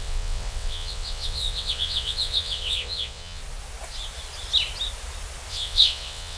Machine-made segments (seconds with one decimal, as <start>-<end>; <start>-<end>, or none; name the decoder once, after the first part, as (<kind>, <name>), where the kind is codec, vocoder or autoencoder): 0.0-3.4 (vocoder, WaveNeXt); 5.5-6.4